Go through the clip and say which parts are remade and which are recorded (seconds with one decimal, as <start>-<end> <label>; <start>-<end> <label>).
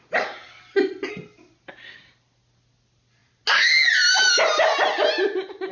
0.0-5.7 recorded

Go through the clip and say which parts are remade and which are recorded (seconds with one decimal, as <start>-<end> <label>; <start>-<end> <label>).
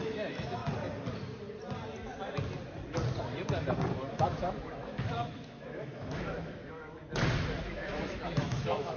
0.0-0.6 remade; 0.6-4.1 recorded; 4.1-7.0 remade; 7.0-7.6 recorded; 7.6-9.0 remade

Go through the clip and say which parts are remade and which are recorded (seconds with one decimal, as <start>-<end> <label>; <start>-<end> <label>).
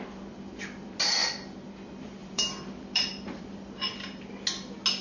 0.0-2.2 recorded; 2.2-3.7 remade; 3.7-5.0 recorded